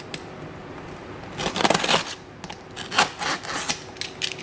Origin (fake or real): real